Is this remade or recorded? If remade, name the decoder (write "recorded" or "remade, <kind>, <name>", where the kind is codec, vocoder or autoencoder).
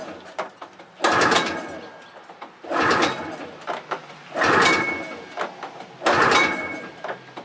recorded